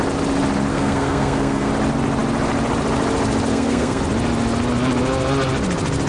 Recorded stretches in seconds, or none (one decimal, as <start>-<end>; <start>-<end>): 0.0-0.7; 1.7-3.5; 4.0-6.1